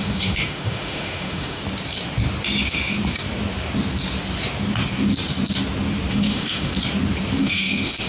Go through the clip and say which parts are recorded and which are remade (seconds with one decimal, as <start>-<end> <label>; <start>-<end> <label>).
0.0-1.6 remade; 1.6-6.1 recorded; 6.1-6.7 remade; 6.7-7.4 recorded; 7.4-8.1 remade

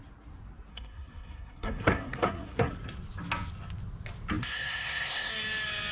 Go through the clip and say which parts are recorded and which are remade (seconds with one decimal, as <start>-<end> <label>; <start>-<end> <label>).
0.0-0.7 recorded; 0.7-2.7 remade; 2.7-4.4 recorded; 4.4-5.3 remade; 5.3-5.9 recorded